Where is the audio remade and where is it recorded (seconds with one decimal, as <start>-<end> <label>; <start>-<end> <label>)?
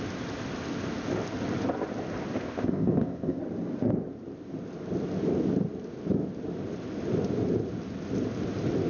0.0-2.4 recorded; 2.4-3.4 remade; 3.4-8.9 recorded